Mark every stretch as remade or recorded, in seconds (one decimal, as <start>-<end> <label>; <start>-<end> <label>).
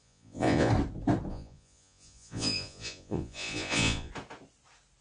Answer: 0.0-0.7 remade; 0.7-1.3 recorded; 1.3-4.1 remade; 4.1-5.0 recorded